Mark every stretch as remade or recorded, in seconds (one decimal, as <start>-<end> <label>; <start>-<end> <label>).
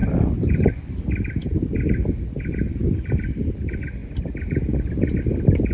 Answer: 0.0-0.8 remade; 0.8-2.8 recorded; 2.8-3.6 remade; 3.6-5.7 recorded